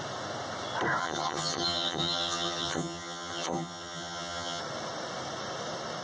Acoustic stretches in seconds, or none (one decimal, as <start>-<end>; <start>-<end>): 0.0-1.0; 4.6-6.0